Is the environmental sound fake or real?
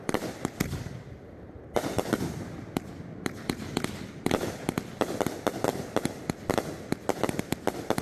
real